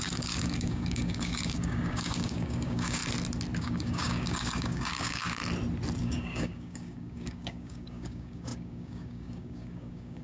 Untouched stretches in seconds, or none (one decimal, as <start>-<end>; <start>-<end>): 3.0-3.6; 5.4-6.0